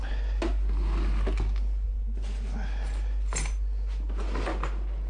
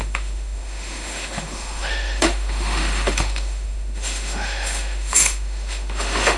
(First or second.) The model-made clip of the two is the second